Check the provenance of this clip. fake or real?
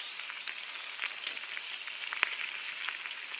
real